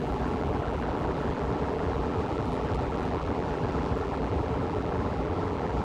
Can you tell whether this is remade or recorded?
remade